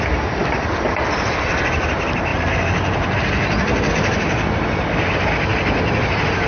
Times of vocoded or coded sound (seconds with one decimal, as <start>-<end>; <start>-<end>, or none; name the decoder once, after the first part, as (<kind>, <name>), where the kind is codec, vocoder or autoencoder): 0.4-1.9 (vocoder, BigVGAN v2); 5.5-6.5